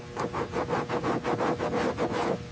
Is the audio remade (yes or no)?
no